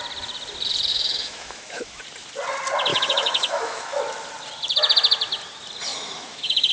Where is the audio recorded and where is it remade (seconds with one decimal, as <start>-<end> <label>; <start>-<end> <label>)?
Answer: 0.0-0.9 recorded; 0.9-2.0 remade; 2.0-2.9 recorded; 2.9-4.0 remade; 4.0-5.9 recorded; 5.9-6.7 remade

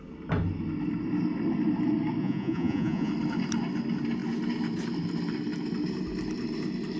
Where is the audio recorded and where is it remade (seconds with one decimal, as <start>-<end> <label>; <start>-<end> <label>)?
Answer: 0.0-2.2 recorded; 2.2-3.1 remade; 3.1-7.0 recorded

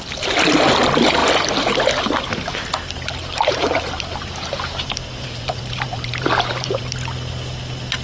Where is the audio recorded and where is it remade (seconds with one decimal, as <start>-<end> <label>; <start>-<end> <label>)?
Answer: 0.0-3.2 recorded; 3.2-6.8 remade; 6.8-8.0 recorded

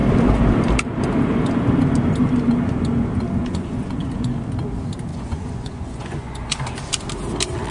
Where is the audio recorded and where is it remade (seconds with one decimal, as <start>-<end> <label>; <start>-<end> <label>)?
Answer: 0.0-3.4 recorded; 3.4-4.3 remade; 4.3-5.1 recorded; 5.1-6.6 remade; 6.6-7.7 recorded

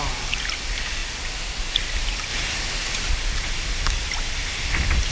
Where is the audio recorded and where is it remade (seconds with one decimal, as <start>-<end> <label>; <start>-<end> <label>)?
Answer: 0.0-5.1 recorded

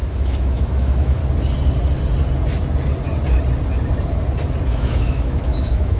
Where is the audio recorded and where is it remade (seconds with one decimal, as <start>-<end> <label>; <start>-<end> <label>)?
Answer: 0.0-1.2 remade; 1.2-4.7 recorded; 4.7-6.0 remade

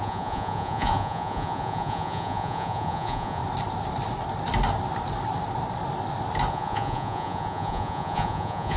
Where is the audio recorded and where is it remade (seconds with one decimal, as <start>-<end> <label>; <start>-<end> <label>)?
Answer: 0.0-3.4 remade; 3.4-6.5 recorded; 6.5-8.8 remade